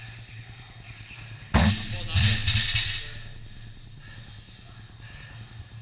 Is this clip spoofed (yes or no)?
no